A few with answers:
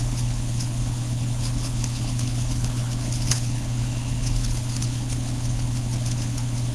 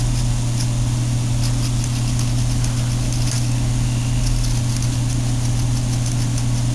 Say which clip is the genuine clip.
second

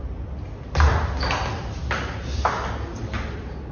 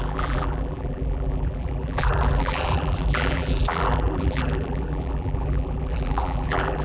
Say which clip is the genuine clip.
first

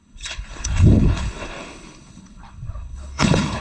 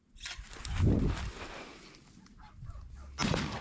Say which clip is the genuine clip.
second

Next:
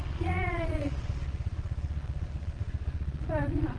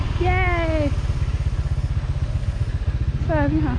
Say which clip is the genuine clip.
second